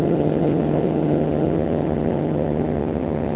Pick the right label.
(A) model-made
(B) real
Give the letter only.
A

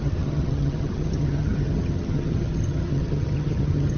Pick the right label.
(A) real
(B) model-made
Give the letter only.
B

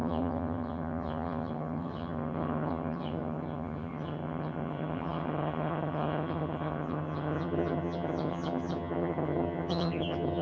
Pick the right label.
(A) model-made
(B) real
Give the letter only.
A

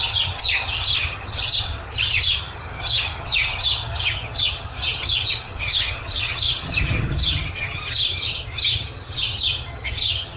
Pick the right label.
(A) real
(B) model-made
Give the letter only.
B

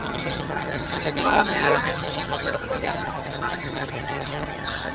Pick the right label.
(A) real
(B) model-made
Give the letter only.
B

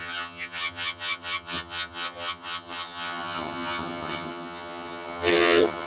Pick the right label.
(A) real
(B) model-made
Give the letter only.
B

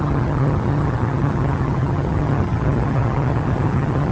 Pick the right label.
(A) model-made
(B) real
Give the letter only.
A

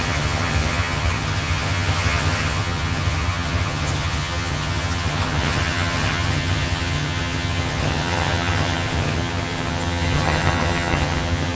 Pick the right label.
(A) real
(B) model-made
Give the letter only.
B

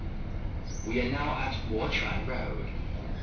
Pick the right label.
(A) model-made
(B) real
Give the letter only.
B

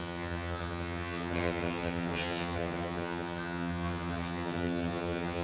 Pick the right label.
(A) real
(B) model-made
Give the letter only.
B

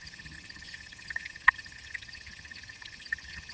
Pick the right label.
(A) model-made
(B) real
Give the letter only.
A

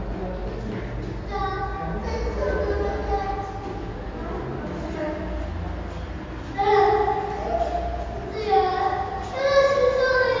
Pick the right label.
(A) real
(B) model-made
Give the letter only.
A